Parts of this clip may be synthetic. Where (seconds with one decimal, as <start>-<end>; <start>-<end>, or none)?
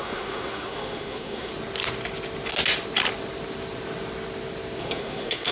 0.0-1.5; 4.8-5.5